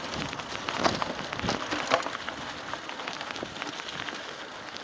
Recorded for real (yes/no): yes